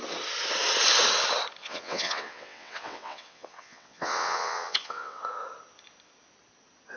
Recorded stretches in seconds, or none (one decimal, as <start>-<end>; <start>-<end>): 0.0-1.6; 5.2-7.0